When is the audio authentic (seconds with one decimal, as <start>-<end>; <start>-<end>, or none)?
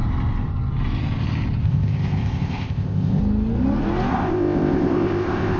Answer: 0.0-1.6; 3.2-4.1